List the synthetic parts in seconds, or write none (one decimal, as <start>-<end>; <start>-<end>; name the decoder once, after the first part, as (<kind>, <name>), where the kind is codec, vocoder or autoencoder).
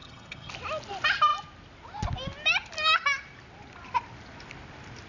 0.0-0.5 (vocoder, HiFi-GAN)